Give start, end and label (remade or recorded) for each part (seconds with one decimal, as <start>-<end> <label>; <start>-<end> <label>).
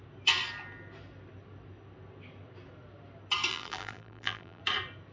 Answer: 0.0-3.5 recorded; 3.5-4.6 remade; 4.6-5.1 recorded